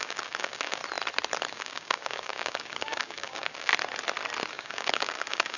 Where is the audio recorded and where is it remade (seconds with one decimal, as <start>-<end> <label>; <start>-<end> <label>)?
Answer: 0.0-0.8 remade; 0.8-1.5 recorded; 1.5-3.7 remade; 3.7-4.5 recorded; 4.5-5.6 remade